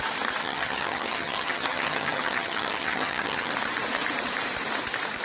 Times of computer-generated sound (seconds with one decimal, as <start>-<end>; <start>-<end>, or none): 0.4-3.5